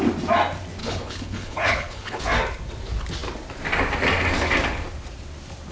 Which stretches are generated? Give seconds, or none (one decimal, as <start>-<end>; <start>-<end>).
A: 0.8-2.2